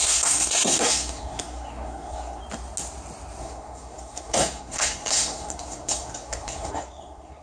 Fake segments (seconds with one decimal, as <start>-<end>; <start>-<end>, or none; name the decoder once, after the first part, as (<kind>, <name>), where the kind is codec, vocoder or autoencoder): 0.0-2.4 (codec, SNAC); 3.4-7.4